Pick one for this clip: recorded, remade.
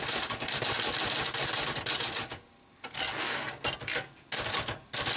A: recorded